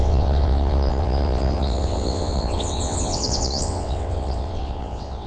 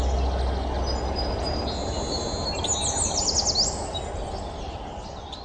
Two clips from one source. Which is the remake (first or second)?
first